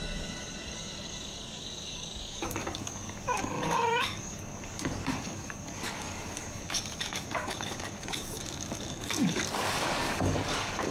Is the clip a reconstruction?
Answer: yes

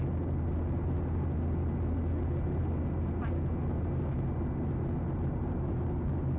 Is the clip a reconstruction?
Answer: no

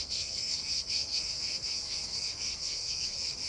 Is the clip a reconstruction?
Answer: yes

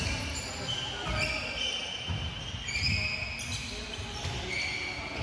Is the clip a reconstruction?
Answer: no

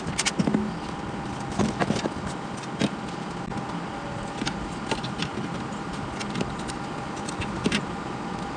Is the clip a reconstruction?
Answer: no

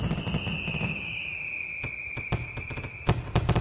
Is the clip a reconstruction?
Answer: no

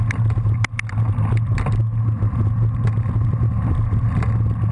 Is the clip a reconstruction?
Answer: no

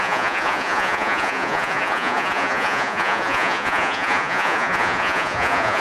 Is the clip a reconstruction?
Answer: yes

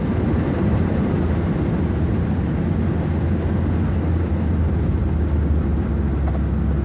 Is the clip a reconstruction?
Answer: no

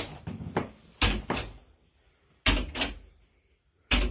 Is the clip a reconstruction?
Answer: no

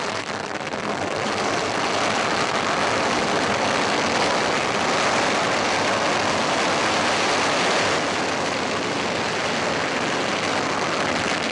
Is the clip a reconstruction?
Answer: no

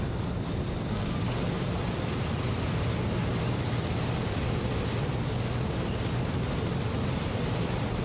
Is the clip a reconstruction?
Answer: no